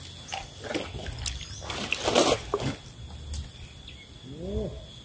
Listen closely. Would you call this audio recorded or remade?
recorded